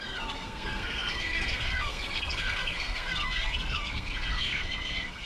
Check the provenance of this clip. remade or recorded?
remade